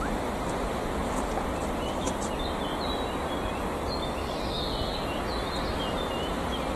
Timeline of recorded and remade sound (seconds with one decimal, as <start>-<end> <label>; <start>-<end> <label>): 0.0-6.8 recorded